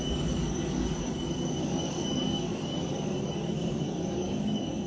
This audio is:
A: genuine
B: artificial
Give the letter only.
B